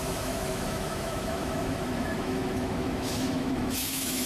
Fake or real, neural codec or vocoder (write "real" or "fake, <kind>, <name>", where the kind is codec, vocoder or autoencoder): fake, autoencoder, DAC-VAE